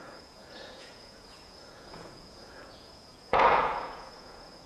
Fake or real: fake